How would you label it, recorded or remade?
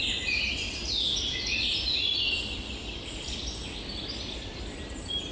recorded